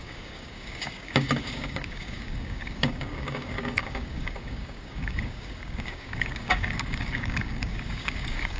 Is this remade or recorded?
remade